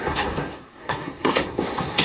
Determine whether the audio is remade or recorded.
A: remade